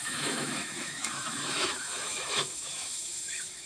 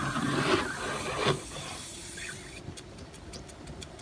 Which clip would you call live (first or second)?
second